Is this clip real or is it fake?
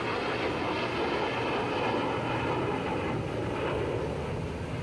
real